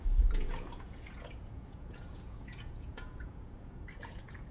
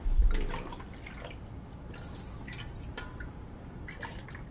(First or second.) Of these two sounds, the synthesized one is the first